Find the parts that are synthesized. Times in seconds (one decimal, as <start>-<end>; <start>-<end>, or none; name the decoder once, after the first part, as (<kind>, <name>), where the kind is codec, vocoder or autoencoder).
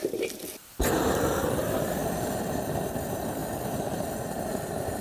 none